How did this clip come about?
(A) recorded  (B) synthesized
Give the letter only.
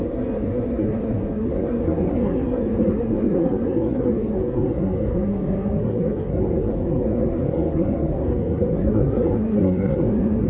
B